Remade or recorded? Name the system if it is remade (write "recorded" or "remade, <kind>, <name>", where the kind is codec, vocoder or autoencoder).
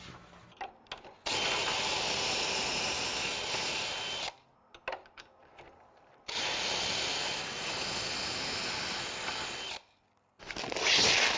recorded